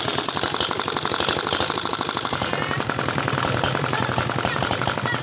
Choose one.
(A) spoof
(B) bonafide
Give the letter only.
B